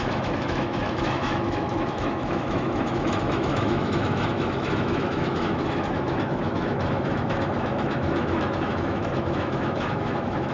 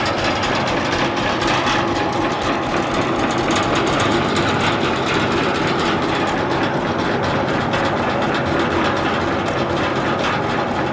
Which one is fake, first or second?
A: first